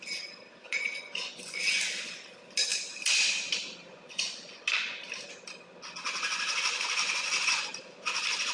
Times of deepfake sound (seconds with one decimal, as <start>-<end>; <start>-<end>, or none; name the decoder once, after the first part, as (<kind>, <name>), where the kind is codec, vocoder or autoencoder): 0.6-1.7 (vocoder, Vocos); 3.9-4.6; 7.0-7.7